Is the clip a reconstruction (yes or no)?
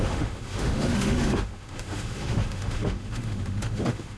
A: yes